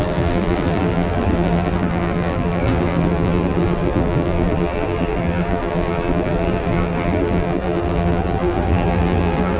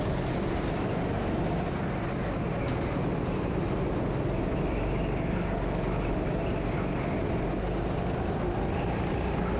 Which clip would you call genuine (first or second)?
second